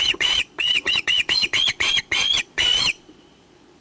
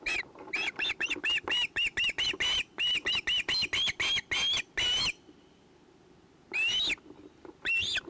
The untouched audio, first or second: second